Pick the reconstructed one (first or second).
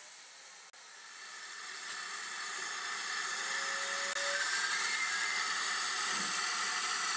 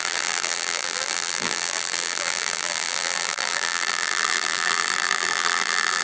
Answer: second